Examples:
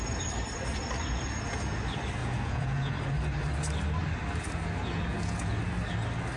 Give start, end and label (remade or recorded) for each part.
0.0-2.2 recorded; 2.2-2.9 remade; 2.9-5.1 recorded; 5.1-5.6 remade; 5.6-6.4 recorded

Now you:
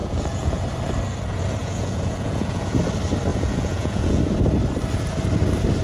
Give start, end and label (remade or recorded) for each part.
0.0-0.6 remade; 0.6-1.6 recorded; 1.6-2.8 remade; 2.8-3.3 recorded; 3.3-4.2 remade; 4.2-5.8 recorded